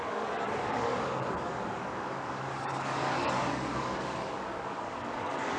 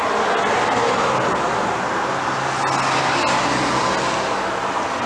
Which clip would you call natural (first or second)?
second